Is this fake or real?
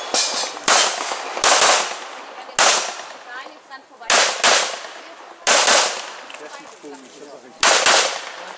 real